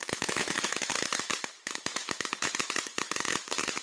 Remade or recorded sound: remade